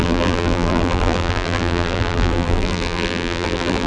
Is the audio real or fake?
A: fake